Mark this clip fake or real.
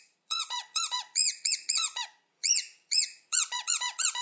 fake